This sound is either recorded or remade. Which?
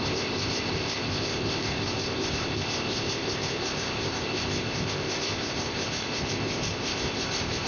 remade